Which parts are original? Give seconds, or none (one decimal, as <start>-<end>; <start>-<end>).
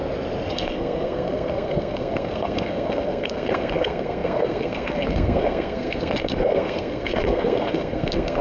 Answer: 0.0-0.5